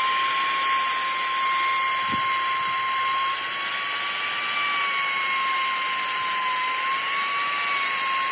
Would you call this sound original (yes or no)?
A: yes